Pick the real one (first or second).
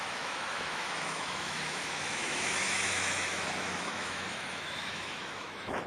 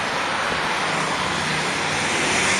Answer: second